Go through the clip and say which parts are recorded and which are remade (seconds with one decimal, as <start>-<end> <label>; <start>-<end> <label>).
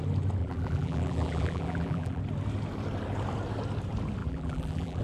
0.0-0.4 recorded; 0.4-2.2 remade; 2.2-4.2 recorded; 4.2-5.0 remade